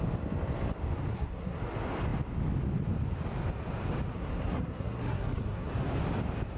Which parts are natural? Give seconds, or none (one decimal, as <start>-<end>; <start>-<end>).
0.0-1.1; 1.6-4.1; 5.7-6.6